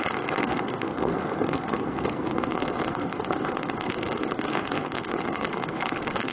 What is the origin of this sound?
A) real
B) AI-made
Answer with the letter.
B